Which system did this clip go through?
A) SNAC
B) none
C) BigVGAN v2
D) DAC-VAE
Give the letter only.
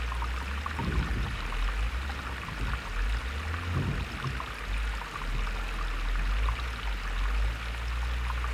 B